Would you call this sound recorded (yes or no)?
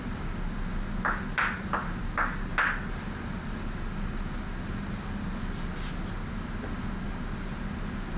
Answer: yes